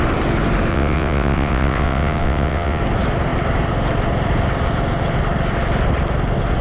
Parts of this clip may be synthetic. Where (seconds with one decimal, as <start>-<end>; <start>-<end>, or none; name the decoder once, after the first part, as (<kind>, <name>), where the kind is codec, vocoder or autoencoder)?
0.7-2.8 (vocoder, WaveNeXt)